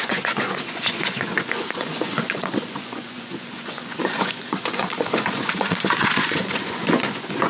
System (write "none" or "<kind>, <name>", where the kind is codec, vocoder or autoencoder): vocoder, Vocos